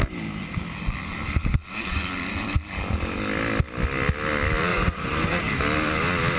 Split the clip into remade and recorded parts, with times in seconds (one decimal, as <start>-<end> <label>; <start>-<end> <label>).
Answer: 0.0-4.7 recorded; 4.7-5.4 remade; 5.4-6.4 recorded